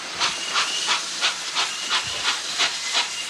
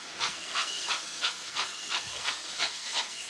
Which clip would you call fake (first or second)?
second